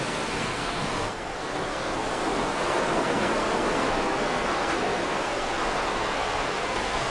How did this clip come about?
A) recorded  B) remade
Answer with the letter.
B